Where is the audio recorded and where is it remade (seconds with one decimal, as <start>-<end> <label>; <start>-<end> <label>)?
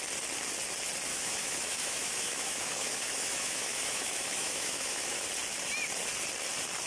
0.0-1.1 recorded; 1.1-5.2 remade; 5.2-6.9 recorded